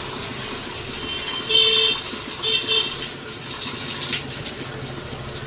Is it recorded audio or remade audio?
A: recorded